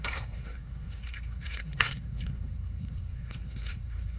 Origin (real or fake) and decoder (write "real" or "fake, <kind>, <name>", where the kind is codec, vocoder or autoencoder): fake, codec, SNAC